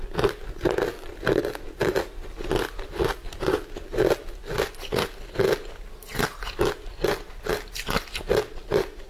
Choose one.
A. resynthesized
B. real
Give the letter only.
B